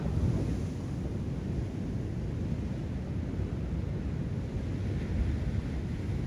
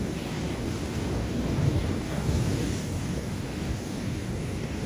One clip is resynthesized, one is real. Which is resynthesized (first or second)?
second